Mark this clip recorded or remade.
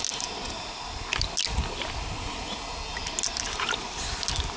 recorded